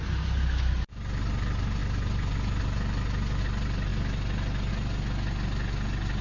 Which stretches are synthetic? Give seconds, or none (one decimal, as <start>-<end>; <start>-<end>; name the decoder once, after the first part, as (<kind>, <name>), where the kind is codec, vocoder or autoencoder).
none

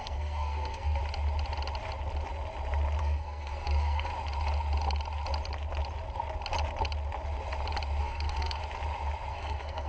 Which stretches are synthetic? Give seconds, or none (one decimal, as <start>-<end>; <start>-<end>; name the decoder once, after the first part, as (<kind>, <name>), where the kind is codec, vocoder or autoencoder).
0.0-1.0 (codec, SNAC); 3.0-4.1; 8.0-8.6; 9.3-9.9

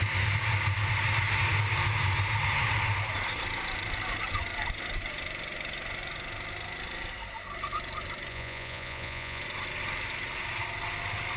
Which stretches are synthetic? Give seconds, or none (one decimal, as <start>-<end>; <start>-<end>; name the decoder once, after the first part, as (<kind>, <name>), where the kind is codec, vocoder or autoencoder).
8.3-9.4 (vocoder, Vocos)

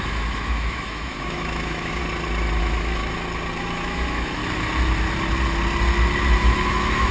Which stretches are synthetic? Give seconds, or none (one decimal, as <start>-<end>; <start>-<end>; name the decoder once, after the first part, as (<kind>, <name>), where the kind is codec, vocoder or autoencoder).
0.0-2.0 (autoencoder, DAC-VAE); 2.6-3.0; 3.6-4.4; 6.4-7.1